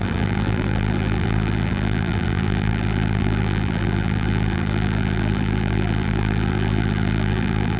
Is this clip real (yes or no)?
no